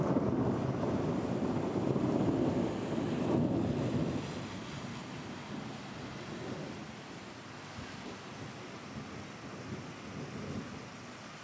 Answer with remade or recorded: recorded